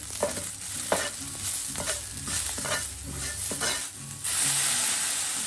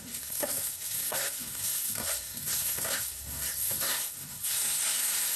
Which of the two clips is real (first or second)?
first